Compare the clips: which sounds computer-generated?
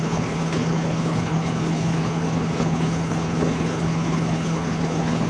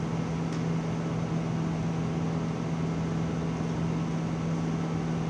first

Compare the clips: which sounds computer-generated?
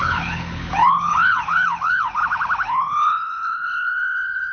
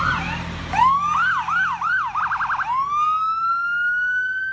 first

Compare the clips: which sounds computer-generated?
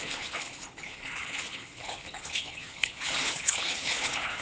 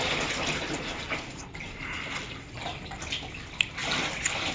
first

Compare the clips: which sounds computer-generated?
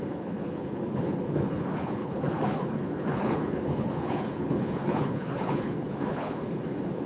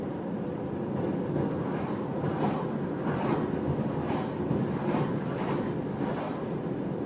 first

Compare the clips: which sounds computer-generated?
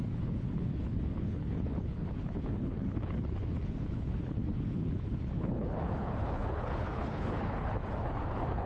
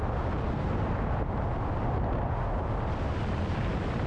first